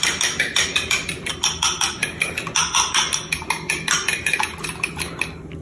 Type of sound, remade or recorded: recorded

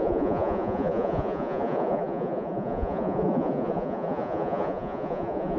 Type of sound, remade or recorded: remade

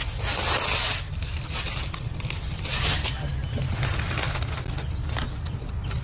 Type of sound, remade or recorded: recorded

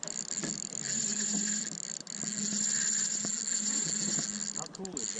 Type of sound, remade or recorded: recorded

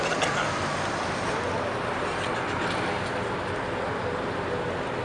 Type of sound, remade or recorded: recorded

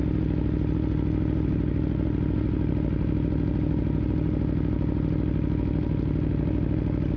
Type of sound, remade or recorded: recorded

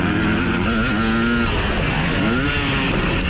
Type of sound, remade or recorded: recorded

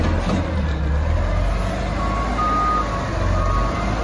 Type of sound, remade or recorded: recorded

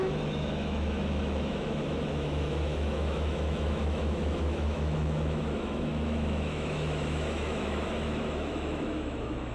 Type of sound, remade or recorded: remade